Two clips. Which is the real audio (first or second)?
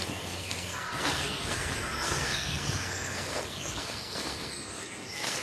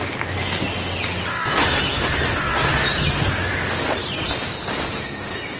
second